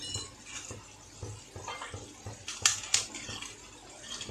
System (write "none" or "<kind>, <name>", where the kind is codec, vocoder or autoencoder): none